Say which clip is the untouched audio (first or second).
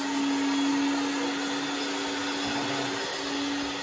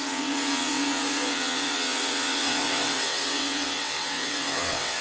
first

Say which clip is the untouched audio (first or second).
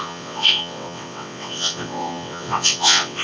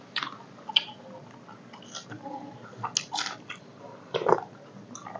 second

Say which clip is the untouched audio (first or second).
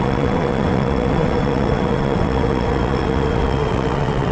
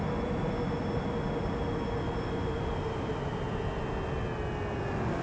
second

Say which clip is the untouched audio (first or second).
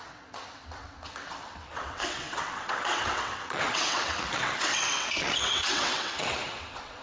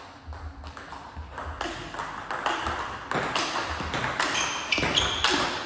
second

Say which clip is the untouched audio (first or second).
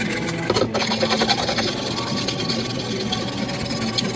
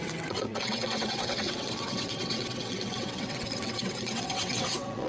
first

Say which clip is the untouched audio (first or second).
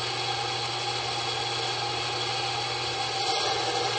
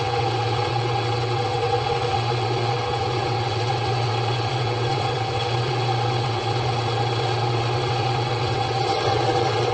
first